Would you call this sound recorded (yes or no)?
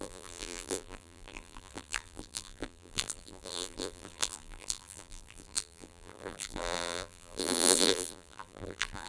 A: no